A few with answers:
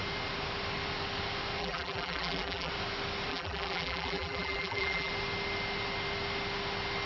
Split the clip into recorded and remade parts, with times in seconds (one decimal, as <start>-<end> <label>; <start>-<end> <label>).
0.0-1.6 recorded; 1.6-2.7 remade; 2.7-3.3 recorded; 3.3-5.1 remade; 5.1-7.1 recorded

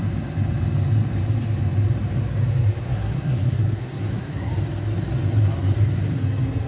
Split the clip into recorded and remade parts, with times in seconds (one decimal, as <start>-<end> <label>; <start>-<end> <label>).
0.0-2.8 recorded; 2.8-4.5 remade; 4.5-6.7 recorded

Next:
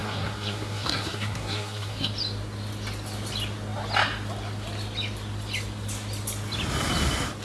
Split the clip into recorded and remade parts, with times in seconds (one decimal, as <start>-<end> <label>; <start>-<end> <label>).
0.0-2.1 remade; 2.1-7.4 recorded

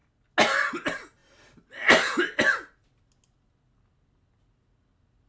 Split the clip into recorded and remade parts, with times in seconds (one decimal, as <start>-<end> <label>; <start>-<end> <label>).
0.0-5.3 recorded

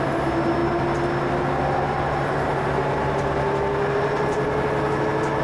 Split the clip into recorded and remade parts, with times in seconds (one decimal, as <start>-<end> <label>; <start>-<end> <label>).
0.0-5.4 recorded

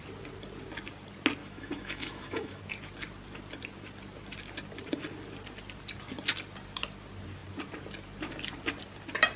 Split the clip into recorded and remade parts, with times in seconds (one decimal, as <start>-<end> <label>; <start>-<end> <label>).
0.0-1.4 recorded; 1.4-2.6 remade; 2.6-9.4 recorded

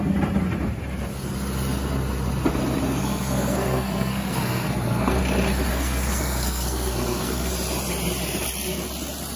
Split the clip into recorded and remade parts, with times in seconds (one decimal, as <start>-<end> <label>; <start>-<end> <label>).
0.0-3.0 recorded; 3.0-5.2 remade; 5.2-5.7 recorded; 5.7-7.5 remade; 7.5-9.4 recorded